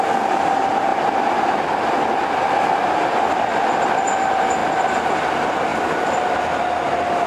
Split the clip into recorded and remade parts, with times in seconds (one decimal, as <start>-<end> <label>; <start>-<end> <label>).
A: 0.0-7.3 recorded